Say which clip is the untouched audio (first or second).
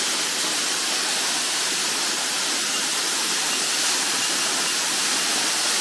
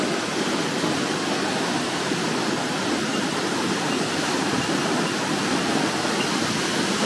first